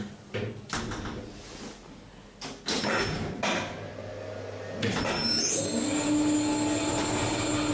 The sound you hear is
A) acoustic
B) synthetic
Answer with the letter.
A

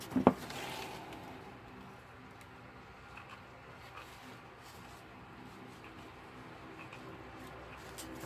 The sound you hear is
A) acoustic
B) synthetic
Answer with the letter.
A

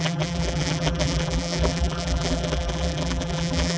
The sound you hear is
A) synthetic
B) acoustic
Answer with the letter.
A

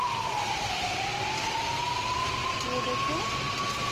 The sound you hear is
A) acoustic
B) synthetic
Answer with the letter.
A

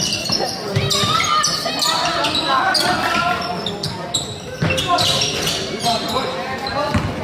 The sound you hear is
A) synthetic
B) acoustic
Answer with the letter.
B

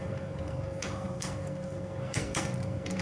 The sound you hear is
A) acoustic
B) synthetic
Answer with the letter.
B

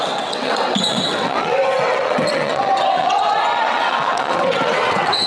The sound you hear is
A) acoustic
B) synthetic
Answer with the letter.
B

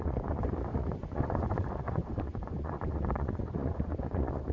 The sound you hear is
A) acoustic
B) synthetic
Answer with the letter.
B